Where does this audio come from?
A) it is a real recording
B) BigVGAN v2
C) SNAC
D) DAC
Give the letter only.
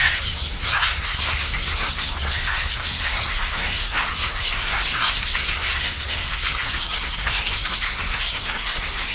C